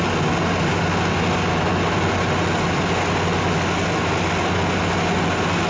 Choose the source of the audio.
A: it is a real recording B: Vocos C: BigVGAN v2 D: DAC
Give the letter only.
A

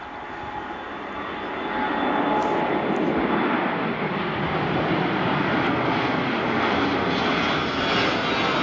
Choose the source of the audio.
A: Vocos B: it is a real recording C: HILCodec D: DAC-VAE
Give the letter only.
B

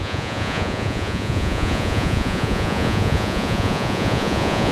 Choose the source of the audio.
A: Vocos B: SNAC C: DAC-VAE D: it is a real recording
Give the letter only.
A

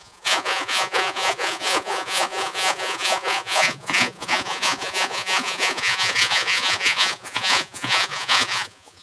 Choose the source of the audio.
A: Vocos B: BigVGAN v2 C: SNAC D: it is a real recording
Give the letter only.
A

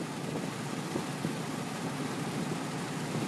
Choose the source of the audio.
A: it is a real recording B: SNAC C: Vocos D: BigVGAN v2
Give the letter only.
A